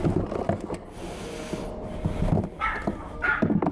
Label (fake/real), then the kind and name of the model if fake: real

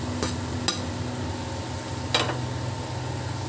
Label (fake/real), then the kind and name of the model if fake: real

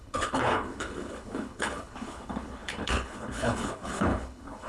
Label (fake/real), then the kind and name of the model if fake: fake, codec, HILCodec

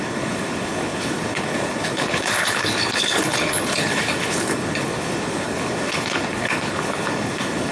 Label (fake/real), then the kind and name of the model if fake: fake, codec, HILCodec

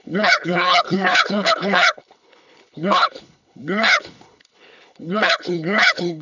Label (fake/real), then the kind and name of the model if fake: fake, codec, HILCodec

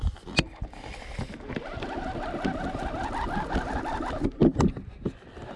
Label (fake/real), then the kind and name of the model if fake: real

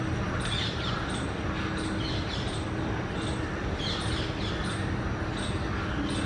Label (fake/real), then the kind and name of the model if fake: real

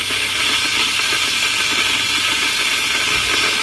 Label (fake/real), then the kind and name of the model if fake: real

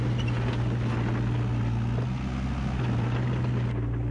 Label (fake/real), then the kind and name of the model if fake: real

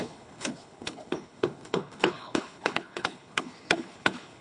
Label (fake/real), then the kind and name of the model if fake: fake, codec, HILCodec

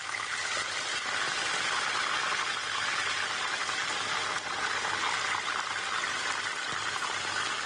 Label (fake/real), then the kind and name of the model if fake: real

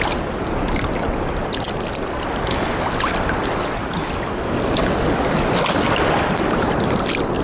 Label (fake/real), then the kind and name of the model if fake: real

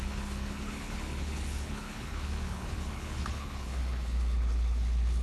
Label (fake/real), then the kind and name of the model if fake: fake, codec, HILCodec